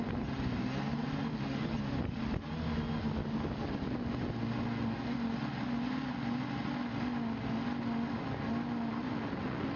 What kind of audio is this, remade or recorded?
recorded